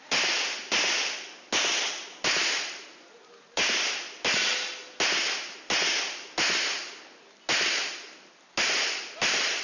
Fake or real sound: real